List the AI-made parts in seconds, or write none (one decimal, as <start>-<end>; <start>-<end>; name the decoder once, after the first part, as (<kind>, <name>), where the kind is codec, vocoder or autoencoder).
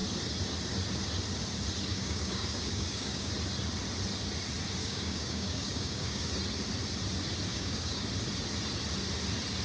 1.9-3.3 (codec, DAC); 4.8-6.3; 7.5-8.0